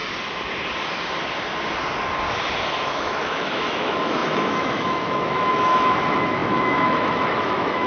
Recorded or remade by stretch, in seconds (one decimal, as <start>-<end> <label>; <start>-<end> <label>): 0.0-2.7 recorded; 2.7-7.9 remade